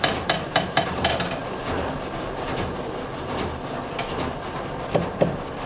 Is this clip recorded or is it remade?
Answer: remade